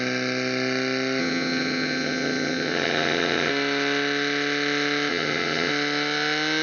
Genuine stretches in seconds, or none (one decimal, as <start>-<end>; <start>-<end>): 0.0-1.2; 3.5-5.1; 5.7-6.6